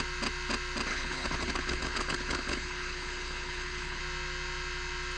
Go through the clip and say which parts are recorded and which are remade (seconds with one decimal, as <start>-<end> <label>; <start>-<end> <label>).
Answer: 0.0-0.9 recorded; 0.9-4.0 remade; 4.0-5.2 recorded

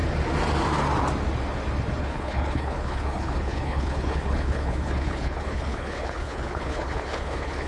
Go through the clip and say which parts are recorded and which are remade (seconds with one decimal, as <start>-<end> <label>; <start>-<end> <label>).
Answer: 0.0-2.0 recorded; 2.0-7.7 remade

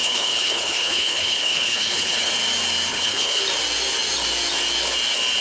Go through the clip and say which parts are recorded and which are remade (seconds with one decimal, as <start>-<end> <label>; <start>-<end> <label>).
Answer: 0.0-2.3 remade; 2.3-2.9 recorded; 2.9-3.4 remade; 3.4-5.4 recorded

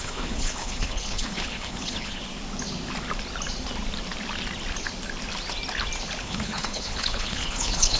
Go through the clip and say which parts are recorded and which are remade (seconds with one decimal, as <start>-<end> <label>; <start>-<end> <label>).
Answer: 0.0-2.2 remade; 2.2-6.2 recorded; 6.2-8.0 remade

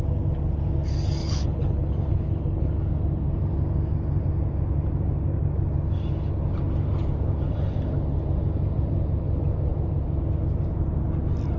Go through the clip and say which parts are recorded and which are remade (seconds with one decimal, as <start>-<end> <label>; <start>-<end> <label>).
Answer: 0.0-1.2 recorded; 1.2-2.8 remade; 2.8-11.6 recorded

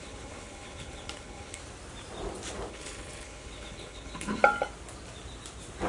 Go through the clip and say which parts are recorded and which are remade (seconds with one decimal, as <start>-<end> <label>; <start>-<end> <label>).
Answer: 0.0-1.6 remade; 1.6-2.7 recorded; 2.7-4.4 remade; 4.4-5.9 recorded

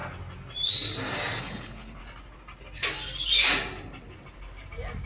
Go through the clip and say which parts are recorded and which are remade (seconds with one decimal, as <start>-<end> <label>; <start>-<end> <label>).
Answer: 0.0-1.4 recorded; 1.4-2.0 remade; 2.0-5.1 recorded